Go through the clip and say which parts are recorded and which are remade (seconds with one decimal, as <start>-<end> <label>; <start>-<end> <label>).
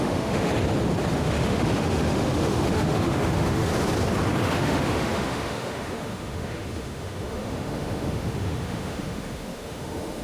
0.0-0.5 remade; 0.5-1.1 recorded; 1.1-3.7 remade; 3.7-4.4 recorded; 4.4-10.2 remade